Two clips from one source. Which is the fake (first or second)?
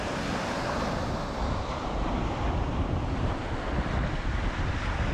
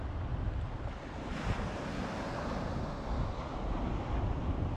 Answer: first